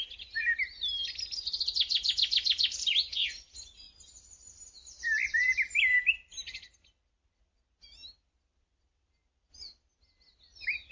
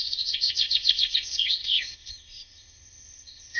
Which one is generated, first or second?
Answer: second